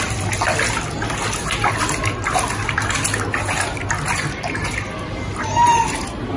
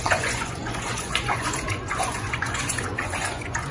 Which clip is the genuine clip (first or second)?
first